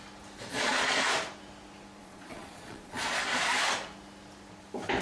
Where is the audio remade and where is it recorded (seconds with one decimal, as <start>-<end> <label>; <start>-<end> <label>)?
0.0-0.5 recorded; 0.5-1.1 remade; 1.1-2.0 recorded; 2.0-3.2 remade; 3.2-5.0 recorded